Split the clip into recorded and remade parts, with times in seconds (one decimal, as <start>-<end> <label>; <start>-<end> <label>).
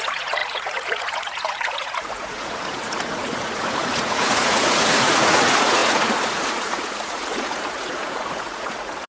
0.0-9.1 remade